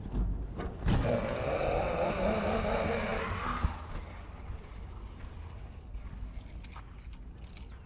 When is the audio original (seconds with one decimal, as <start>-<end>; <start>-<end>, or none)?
0.0-7.9